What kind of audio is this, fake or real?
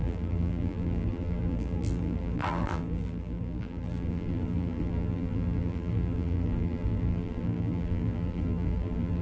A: fake